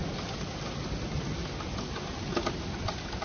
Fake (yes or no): no